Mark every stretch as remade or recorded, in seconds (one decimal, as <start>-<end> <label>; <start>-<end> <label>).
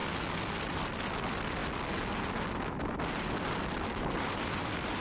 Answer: 0.0-1.0 recorded; 1.0-1.6 remade; 1.6-3.4 recorded; 3.4-5.0 remade